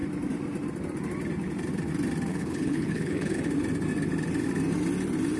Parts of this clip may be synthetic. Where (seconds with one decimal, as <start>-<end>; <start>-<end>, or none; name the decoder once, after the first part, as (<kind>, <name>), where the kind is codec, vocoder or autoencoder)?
2.3-3.4 (codec, HILCodec)